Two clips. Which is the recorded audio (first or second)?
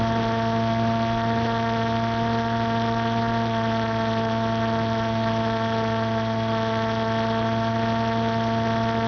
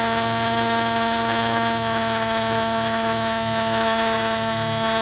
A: first